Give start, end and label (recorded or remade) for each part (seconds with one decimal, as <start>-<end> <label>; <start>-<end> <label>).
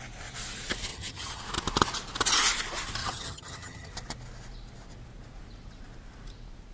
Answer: 0.0-0.9 recorded; 0.9-1.4 remade; 1.4-3.0 recorded; 3.0-3.9 remade; 3.9-6.7 recorded